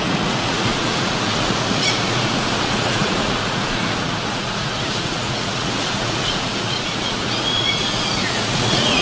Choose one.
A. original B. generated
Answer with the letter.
B